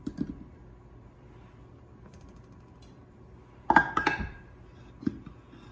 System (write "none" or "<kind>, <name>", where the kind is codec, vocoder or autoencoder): none